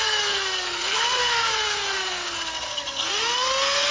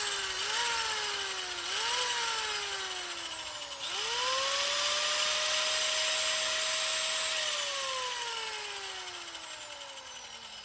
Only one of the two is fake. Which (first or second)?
first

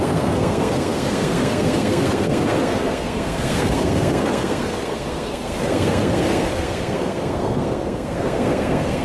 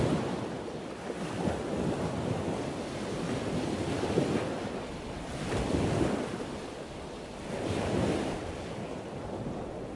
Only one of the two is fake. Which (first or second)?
first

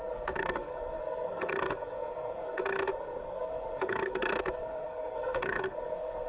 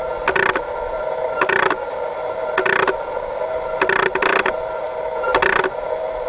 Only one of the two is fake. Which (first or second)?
first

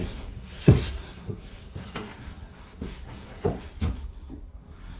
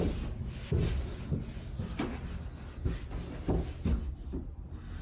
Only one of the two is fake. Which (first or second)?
first